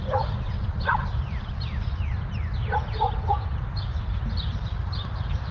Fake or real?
real